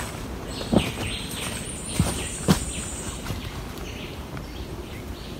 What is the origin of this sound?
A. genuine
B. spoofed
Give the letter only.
A